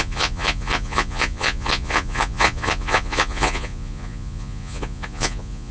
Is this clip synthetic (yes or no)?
yes